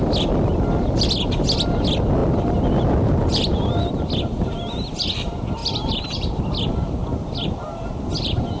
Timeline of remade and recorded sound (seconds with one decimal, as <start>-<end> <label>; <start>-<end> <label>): 0.0-5.6 recorded; 5.6-6.4 remade; 6.4-7.0 recorded; 7.0-7.6 remade; 7.6-8.6 recorded